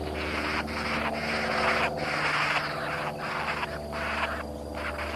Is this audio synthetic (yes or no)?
no